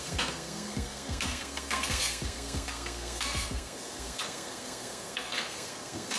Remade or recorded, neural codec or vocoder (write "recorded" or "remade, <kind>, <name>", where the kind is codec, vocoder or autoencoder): remade, codec, SNAC